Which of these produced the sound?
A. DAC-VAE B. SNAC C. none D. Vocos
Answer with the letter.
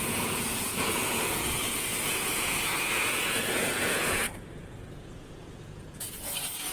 D